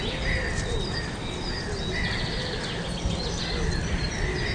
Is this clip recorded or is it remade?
recorded